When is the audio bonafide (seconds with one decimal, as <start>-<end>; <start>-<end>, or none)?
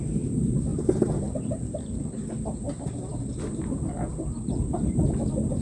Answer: 0.0-5.6